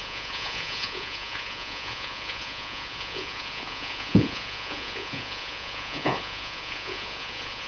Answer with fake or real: fake